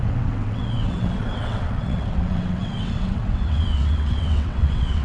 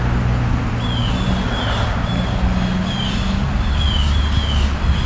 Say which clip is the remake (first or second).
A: first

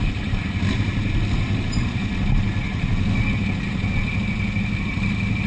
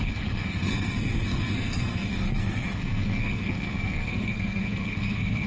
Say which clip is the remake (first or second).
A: second